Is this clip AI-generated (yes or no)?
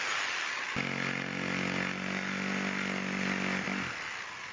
no